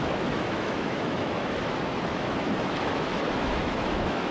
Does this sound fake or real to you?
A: fake